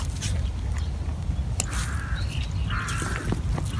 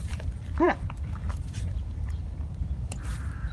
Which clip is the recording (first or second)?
first